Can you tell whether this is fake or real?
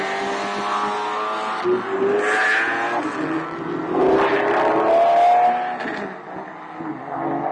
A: real